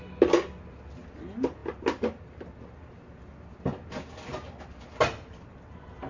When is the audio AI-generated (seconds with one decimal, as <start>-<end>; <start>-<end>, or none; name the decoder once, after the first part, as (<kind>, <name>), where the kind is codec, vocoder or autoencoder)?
none